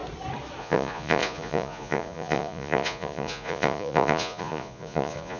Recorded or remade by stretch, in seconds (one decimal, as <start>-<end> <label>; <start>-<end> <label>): 0.0-0.6 recorded; 0.6-5.4 remade